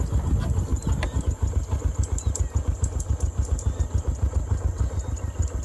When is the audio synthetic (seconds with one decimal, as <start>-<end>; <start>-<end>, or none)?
none